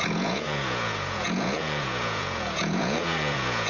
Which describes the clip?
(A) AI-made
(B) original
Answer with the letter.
A